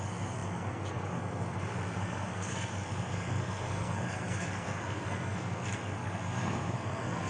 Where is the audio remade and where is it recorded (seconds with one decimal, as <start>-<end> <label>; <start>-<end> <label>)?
0.0-7.3 remade